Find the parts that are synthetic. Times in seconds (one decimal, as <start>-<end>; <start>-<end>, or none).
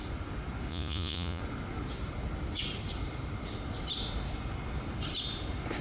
0.7-1.4